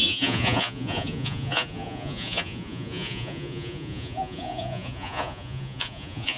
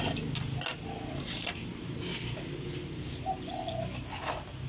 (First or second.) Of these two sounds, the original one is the second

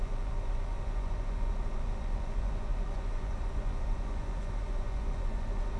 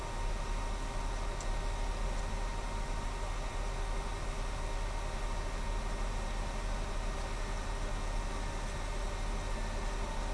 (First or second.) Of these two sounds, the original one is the second